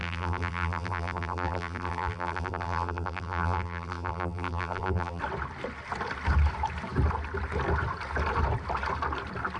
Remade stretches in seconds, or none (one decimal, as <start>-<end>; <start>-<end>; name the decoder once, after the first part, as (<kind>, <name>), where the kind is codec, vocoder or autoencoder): 0.0-5.2 (vocoder, BigVGAN v2)